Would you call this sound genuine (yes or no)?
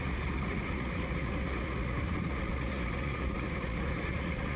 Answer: no